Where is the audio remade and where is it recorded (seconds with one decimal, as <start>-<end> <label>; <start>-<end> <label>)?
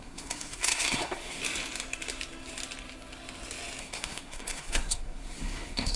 0.0-1.4 remade; 1.4-3.8 recorded; 3.8-6.0 remade